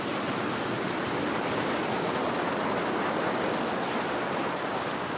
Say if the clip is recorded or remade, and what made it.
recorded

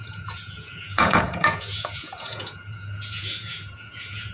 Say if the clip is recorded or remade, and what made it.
remade, vocoder, Vocos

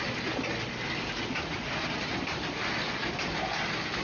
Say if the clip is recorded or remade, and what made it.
recorded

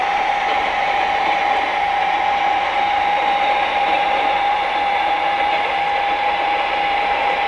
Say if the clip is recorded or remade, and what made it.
remade, vocoder, BigVGAN v2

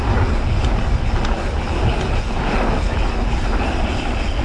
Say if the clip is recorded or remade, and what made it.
recorded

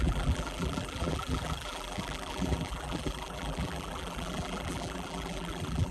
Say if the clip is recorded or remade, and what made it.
remade, vocoder, BigVGAN v2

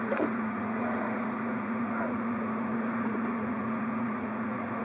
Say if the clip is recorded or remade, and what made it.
remade, vocoder, Vocos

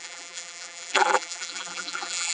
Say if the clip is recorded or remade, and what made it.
remade, vocoder, BigVGAN v2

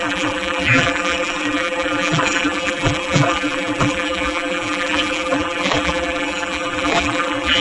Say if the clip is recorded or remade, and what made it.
remade, vocoder, BigVGAN v2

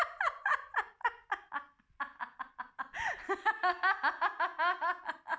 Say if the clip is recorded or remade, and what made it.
recorded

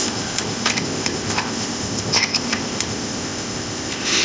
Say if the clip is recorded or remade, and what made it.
remade, codec, ZipCodec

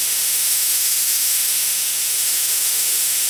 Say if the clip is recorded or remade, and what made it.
remade, autoencoder, DAC-VAE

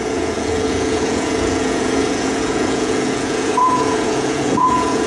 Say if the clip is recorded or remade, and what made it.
remade, vocoder, Vocos